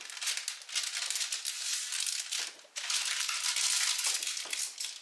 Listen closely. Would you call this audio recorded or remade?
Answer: recorded